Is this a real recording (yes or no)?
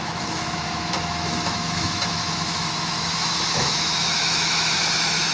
no